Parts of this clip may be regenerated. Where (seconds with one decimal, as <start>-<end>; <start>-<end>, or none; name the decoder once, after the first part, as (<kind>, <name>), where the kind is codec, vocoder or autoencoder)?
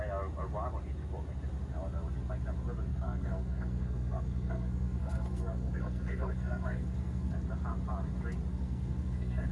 2.9-7.3 (codec, SNAC); 8.5-9.5